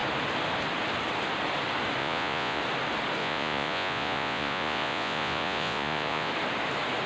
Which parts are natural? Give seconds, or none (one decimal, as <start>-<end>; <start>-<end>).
0.0-2.0; 2.6-3.2; 6.3-7.1